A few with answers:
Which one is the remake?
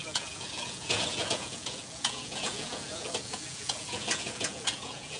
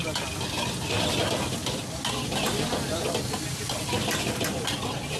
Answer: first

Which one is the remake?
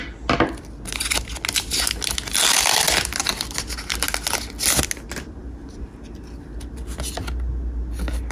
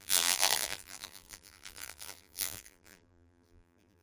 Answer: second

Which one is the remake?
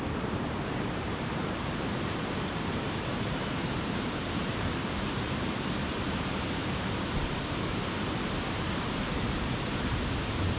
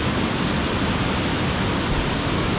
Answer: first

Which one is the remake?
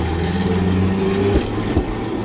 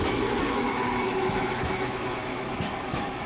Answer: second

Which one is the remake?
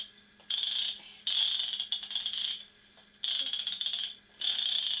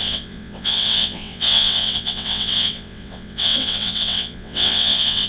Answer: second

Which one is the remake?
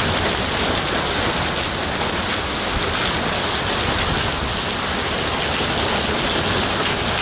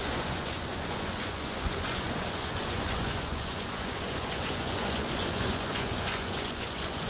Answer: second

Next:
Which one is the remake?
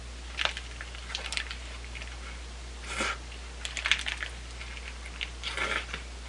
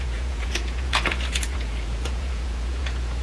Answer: second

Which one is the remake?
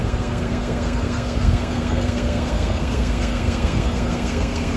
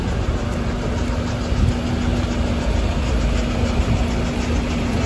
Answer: first